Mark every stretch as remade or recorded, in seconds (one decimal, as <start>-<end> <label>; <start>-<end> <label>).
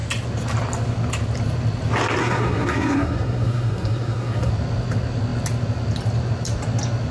0.0-2.2 recorded; 2.2-4.5 remade; 4.5-7.1 recorded